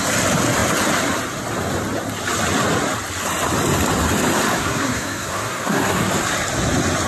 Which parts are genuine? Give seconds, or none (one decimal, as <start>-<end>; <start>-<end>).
0.0-4.6; 6.1-7.1